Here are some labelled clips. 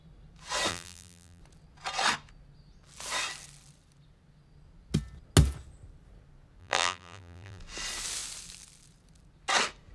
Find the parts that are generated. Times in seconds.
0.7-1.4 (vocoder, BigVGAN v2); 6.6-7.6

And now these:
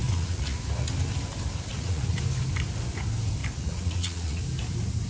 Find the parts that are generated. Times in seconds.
0.0-0.9 (vocoder, Vocos); 1.7-2.2; 3.4-4.4

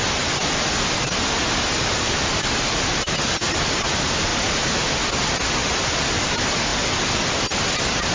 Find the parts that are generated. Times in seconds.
none